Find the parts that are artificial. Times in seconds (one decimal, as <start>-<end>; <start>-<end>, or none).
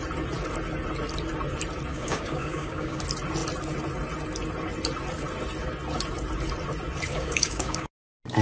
1.9-3.0; 7.1-7.9